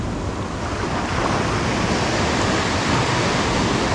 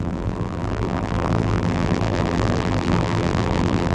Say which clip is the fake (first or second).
second